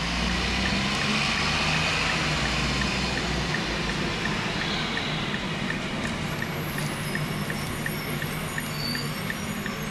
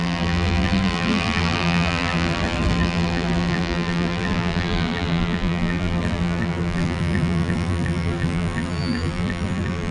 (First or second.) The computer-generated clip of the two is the second